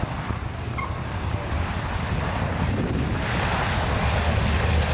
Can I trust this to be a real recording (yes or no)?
yes